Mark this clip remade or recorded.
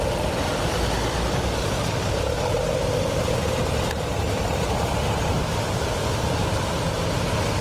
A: recorded